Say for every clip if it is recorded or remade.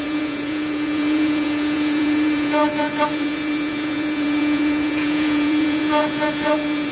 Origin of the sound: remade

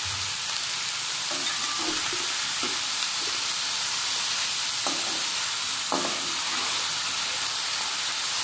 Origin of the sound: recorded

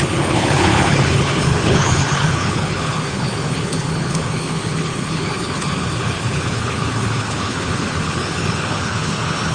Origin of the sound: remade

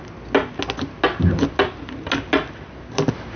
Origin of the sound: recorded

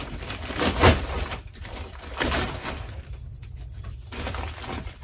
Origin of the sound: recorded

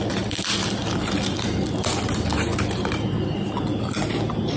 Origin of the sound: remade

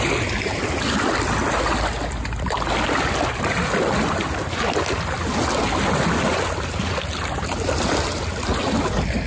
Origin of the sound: recorded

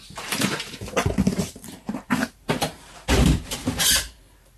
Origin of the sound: remade